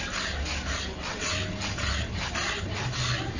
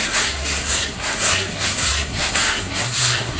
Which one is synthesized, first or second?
second